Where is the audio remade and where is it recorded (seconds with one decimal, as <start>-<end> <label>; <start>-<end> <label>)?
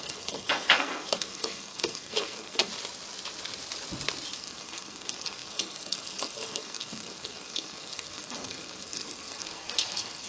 0.0-2.7 remade; 2.7-4.3 recorded; 4.3-10.3 remade